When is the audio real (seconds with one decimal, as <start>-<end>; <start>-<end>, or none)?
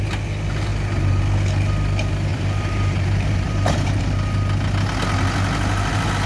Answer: 0.0-0.7; 1.2-2.3; 4.0-6.3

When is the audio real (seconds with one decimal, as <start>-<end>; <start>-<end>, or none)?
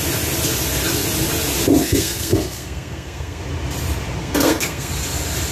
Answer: 0.0-1.8; 3.4-4.2; 4.9-5.5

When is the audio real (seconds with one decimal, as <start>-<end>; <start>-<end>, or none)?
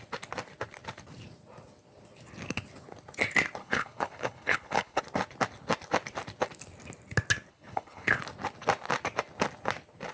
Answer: 0.0-3.6; 5.0-7.5; 8.2-10.1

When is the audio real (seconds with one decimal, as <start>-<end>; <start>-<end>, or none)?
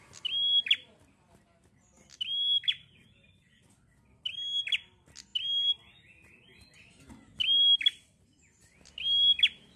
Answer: 0.0-9.8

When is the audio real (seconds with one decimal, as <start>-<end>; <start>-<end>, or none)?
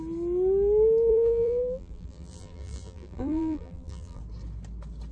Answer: 0.0-1.1; 4.2-5.1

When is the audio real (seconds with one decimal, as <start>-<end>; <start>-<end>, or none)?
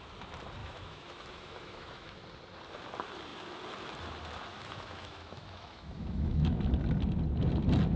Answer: 0.0-0.6; 2.2-4.5; 6.7-8.0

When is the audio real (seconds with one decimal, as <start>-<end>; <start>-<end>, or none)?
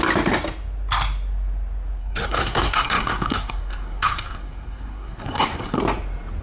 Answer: 0.0-2.0; 5.8-6.4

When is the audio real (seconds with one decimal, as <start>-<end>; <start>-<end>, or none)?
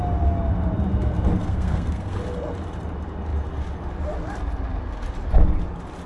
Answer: 0.0-1.4; 2.2-6.1